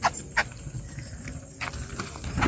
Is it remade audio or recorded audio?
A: recorded